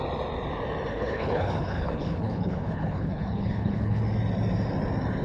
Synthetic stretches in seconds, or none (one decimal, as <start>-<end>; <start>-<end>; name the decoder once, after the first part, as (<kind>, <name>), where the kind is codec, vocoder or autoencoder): 0.9-4.0 (codec, HILCodec)